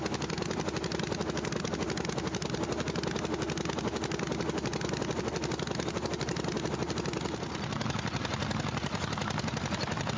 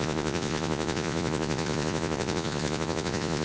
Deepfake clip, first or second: second